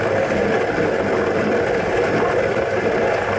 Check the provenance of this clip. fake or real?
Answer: real